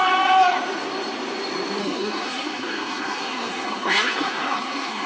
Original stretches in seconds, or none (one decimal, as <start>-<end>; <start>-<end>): 0.0-1.8